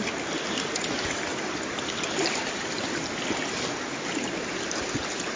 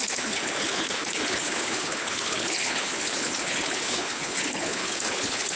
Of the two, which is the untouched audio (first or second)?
first